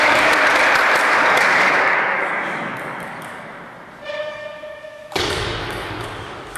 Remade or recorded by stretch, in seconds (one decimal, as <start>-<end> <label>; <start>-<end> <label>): 0.0-0.5 remade; 0.5-1.1 recorded; 1.1-3.5 remade; 3.5-4.2 recorded; 4.2-6.6 remade